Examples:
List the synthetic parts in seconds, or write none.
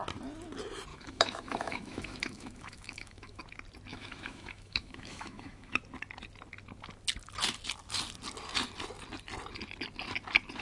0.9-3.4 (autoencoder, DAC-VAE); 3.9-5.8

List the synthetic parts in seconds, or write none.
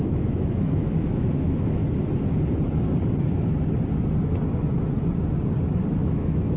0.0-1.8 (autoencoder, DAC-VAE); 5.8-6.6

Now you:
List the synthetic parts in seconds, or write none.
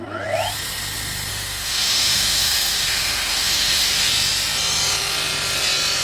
1.3-4.1 (autoencoder, DAC-VAE)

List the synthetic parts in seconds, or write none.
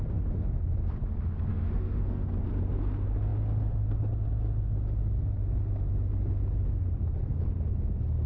1.5-2.3 (autoencoder, DAC-VAE)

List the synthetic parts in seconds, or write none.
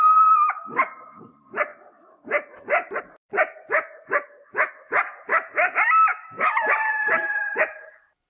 6.1-6.6 (autoencoder, DAC-VAE)